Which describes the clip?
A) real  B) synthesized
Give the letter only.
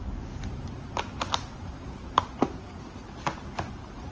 A